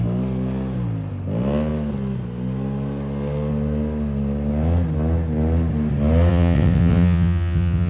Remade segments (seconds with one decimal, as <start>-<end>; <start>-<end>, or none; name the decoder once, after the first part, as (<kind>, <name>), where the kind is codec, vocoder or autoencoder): 6.3-7.9 (vocoder, WaveNeXt)